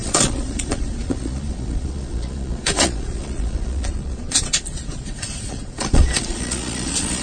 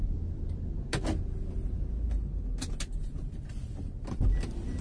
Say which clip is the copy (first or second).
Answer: first